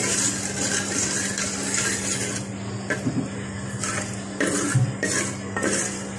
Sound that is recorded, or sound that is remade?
recorded